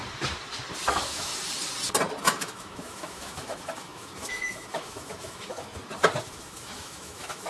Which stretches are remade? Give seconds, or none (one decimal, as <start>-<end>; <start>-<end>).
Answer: 0.9-1.3; 2.2-5.7; 6.2-7.5